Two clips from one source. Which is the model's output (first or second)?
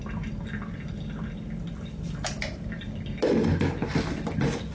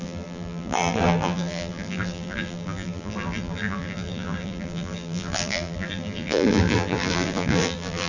second